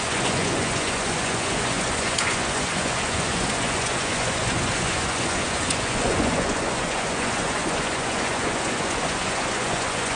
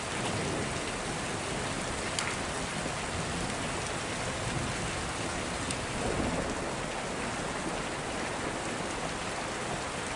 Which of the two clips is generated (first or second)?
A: first